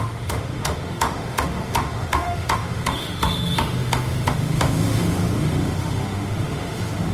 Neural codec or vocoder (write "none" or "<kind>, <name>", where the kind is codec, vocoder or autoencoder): autoencoder, DAC-VAE